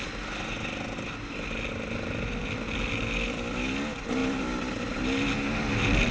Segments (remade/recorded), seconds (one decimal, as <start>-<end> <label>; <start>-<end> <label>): 0.0-6.1 recorded